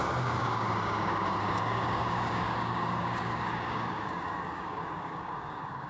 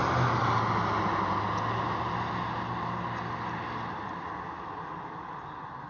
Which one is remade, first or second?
first